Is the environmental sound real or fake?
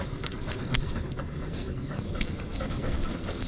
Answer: fake